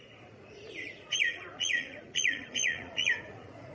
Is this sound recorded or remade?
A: remade